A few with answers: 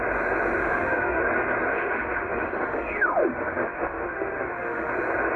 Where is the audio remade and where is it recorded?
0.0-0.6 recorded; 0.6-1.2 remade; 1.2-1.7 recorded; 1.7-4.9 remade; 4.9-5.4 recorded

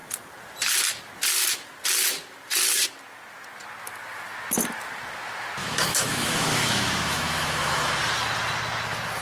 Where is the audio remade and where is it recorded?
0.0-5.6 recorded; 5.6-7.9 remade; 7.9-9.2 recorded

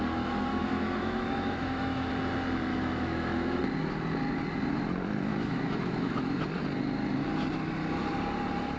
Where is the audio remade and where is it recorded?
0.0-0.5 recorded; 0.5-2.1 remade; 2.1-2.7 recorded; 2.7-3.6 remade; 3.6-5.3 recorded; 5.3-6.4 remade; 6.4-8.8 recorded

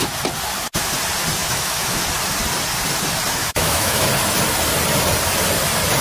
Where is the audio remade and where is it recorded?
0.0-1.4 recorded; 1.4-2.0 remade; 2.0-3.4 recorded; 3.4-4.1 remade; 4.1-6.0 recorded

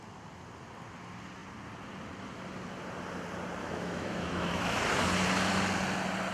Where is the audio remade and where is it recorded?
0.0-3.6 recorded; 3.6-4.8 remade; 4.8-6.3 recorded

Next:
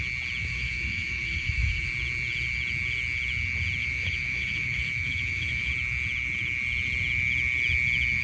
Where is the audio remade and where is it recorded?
0.0-0.4 recorded; 0.4-1.8 remade; 1.8-3.8 recorded; 3.8-5.7 remade; 5.7-8.2 recorded

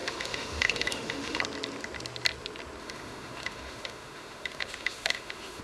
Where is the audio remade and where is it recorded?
0.0-1.4 remade; 1.4-2.8 recorded; 2.8-5.6 remade

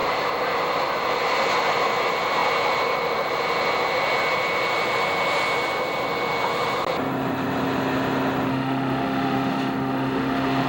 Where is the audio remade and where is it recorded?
0.0-8.5 recorded; 8.5-10.7 remade